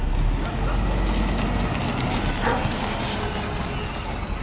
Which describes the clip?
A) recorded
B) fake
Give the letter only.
A